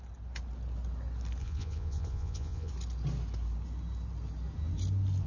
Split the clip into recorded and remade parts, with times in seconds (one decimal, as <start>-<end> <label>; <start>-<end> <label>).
0.0-1.4 recorded; 1.4-2.7 remade; 2.7-5.3 recorded